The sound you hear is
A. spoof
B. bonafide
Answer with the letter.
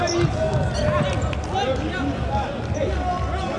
B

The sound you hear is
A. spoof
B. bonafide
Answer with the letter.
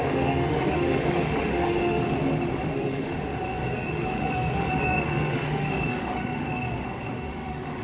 A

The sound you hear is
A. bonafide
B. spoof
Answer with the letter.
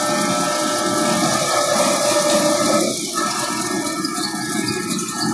A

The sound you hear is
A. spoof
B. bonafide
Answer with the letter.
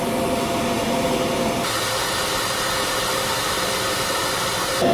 B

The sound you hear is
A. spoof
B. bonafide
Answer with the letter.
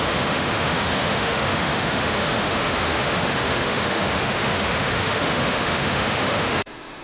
A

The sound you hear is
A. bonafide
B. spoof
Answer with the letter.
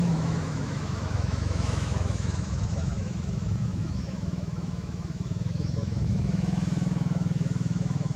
B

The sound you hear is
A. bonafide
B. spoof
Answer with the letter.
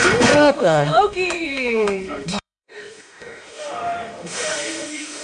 B